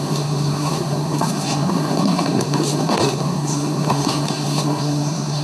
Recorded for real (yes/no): no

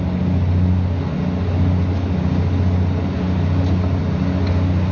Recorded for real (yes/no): yes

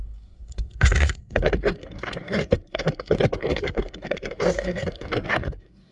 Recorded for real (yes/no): no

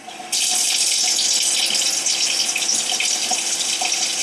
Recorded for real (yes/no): yes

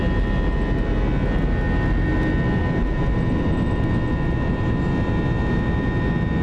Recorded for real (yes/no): yes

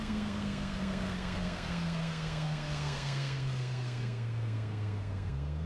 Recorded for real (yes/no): no